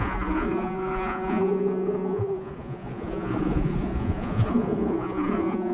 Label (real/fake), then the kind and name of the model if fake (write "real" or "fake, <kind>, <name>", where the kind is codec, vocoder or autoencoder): fake, vocoder, Vocos